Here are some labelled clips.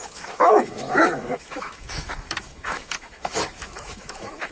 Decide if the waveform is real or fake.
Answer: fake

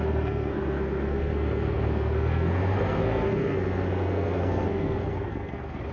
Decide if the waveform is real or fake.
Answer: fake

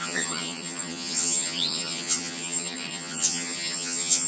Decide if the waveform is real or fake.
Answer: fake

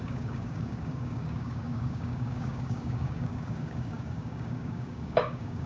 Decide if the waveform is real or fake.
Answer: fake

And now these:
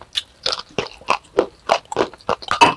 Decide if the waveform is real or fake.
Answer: real